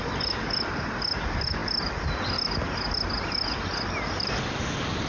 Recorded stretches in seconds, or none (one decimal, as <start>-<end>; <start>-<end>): 1.6-4.4

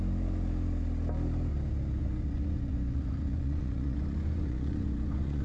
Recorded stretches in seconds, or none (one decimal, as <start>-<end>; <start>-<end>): 0.0-2.0

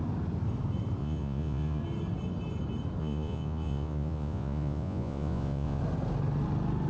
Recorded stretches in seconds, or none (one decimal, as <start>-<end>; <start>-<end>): 0.0-1.0; 1.8-3.0; 5.8-6.9